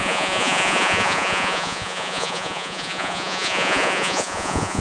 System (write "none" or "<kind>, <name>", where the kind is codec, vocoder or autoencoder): vocoder, Vocos